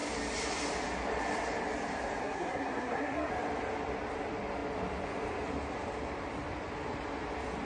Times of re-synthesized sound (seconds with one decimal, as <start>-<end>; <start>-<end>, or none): 2.2-3.3